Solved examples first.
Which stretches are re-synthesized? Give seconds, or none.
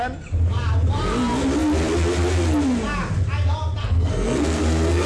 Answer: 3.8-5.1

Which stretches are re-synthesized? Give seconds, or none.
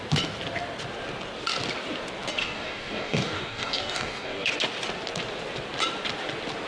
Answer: 2.4-4.5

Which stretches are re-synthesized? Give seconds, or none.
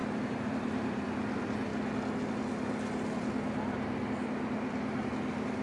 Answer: 0.0-1.0